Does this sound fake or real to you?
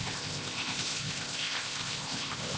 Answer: fake